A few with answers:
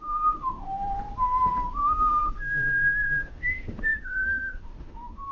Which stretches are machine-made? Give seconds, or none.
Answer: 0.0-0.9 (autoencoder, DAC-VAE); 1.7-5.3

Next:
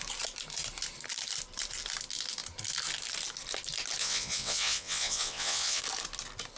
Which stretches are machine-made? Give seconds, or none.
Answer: 4.0-5.8 (vocoder, WaveNeXt)

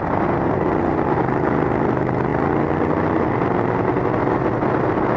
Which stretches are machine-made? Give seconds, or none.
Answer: none

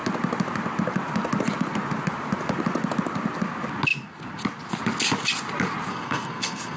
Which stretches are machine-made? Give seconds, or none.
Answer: 5.9-6.8 (codec, SNAC)

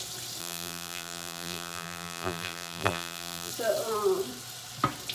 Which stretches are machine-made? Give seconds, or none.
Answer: 0.4-3.5 (vocoder, BigVGAN v2)

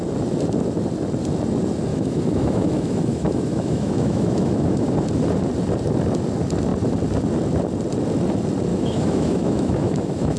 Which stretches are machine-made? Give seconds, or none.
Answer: 1.9-4.9 (autoencoder, DAC-VAE); 8.7-10.4

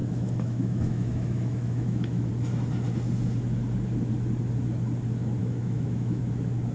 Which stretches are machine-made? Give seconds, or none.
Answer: 0.0-2.3 (autoencoder, DAC-VAE); 5.4-6.2